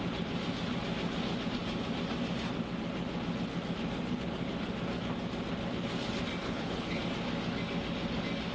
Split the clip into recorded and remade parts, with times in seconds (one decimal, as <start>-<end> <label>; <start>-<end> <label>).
0.0-6.4 recorded; 6.4-7.0 remade; 7.0-8.5 recorded